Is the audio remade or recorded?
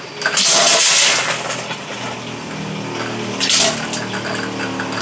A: recorded